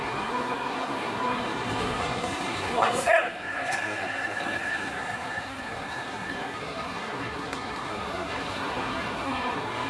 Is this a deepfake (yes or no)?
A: yes